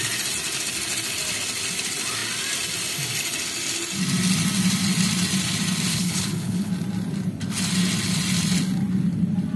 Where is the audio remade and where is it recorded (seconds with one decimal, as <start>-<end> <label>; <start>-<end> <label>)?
0.0-5.9 recorded; 5.9-6.7 remade; 6.7-9.6 recorded